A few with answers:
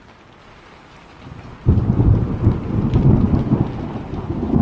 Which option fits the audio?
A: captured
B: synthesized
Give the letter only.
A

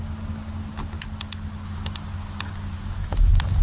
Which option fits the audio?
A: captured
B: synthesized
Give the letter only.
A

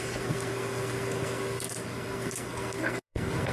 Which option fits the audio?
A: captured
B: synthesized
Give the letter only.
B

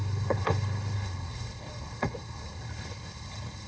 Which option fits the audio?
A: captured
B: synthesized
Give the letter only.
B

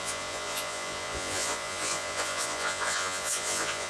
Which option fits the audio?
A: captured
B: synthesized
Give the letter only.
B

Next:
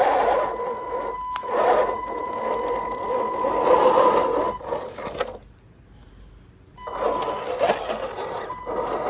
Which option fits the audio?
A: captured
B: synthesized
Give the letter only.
A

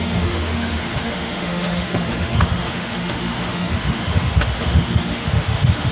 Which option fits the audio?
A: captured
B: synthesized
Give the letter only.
B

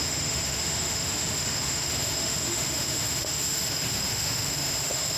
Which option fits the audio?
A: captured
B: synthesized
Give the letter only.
B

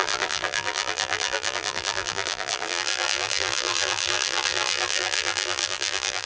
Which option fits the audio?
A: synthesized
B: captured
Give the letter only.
A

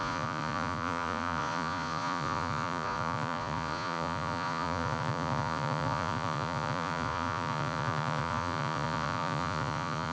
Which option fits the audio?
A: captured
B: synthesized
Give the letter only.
B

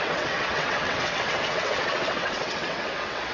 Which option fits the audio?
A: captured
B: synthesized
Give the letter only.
B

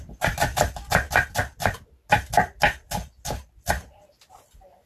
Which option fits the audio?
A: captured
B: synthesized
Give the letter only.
A